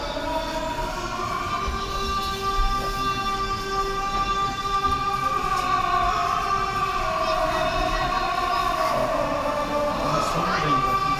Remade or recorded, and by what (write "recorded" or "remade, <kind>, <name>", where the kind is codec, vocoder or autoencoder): recorded